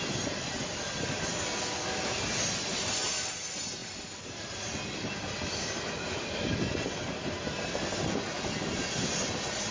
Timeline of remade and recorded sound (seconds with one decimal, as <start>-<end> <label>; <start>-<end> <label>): 0.0-9.7 recorded